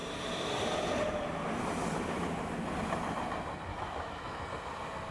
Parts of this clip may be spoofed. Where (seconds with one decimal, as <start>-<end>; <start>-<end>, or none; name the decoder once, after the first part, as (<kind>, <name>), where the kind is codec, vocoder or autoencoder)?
3.7-4.4 (autoencoder, DAC-VAE)